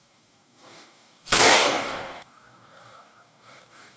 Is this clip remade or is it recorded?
remade